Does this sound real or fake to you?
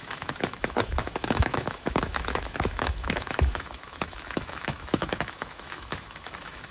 fake